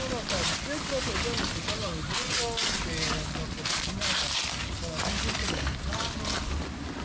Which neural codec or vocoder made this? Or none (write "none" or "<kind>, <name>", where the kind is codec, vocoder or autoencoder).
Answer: none